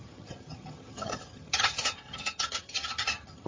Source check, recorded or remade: remade